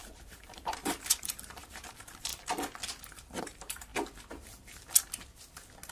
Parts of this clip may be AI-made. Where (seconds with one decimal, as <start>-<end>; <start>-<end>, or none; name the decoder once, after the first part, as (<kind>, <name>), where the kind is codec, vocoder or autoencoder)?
0.0-2.3 (vocoder, BigVGAN v2); 3.4-3.9